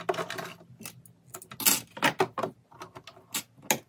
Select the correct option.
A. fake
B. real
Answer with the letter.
B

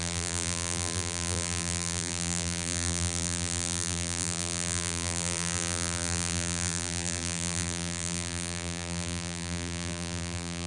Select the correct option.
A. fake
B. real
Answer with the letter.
A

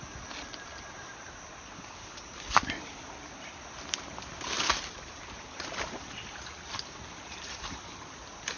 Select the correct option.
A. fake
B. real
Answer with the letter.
B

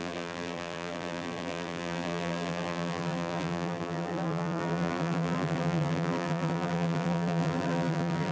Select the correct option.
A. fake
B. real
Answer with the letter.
A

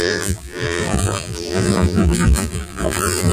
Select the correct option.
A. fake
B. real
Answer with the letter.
A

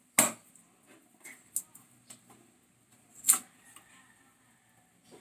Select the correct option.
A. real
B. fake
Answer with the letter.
A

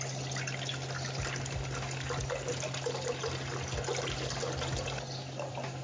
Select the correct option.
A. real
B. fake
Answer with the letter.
A